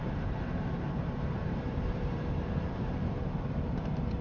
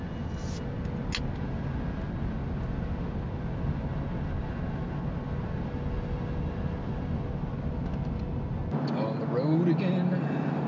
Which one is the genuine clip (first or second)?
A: second